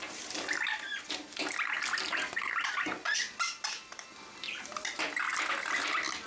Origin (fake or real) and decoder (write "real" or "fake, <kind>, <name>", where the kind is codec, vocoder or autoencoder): real